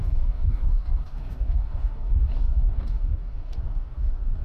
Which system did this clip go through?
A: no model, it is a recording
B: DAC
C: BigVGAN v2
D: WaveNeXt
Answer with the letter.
B